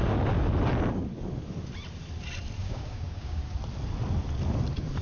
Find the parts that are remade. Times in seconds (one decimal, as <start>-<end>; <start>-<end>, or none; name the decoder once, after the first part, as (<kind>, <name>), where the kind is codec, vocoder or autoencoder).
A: 2.6-3.4 (codec, DAC)